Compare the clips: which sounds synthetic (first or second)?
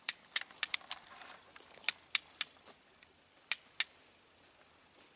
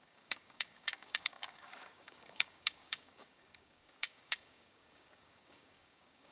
second